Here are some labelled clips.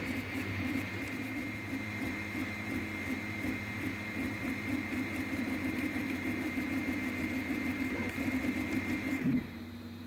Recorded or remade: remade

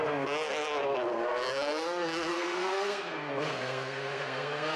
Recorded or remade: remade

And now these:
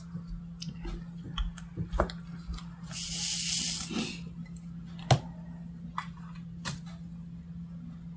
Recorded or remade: recorded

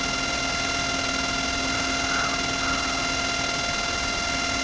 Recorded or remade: recorded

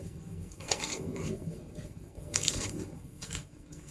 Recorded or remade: remade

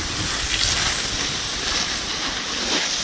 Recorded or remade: recorded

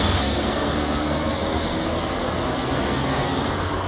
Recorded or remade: remade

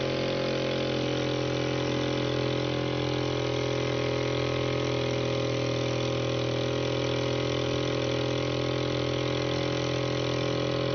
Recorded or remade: recorded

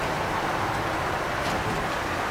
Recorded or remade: recorded